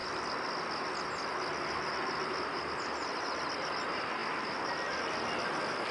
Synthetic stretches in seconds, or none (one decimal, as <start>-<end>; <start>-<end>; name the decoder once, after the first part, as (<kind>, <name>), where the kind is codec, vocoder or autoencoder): none